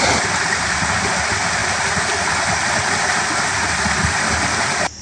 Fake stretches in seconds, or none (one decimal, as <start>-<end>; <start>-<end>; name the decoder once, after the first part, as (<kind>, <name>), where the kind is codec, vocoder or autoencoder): none